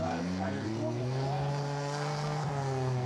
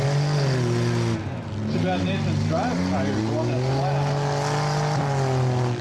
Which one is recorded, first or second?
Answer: second